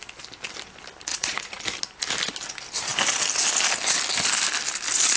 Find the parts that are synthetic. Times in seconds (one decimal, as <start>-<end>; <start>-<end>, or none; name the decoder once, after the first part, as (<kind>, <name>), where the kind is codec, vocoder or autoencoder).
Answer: 1.1-1.6 (vocoder, Vocos)